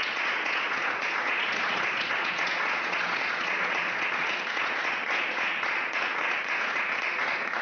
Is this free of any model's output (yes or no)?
no